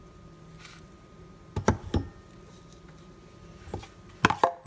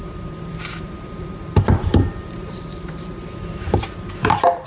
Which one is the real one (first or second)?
first